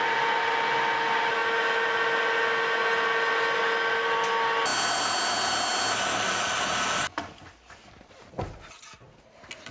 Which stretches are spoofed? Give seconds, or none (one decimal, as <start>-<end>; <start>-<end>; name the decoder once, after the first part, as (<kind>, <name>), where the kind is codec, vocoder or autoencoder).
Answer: none